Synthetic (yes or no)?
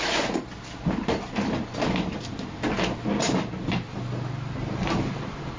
no